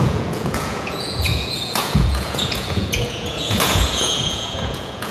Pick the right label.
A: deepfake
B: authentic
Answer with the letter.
A